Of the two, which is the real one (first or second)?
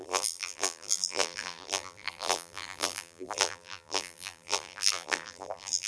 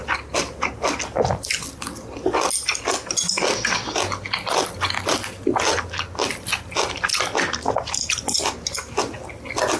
second